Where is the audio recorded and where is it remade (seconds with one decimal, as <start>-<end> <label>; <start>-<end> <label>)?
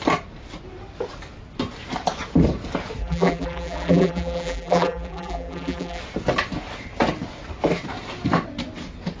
0.0-3.0 recorded; 3.0-6.0 remade; 6.0-9.2 recorded